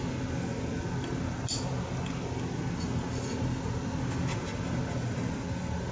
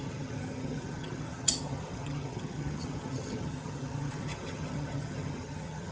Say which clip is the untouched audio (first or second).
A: first